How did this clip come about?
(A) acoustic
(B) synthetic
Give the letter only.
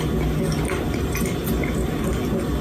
A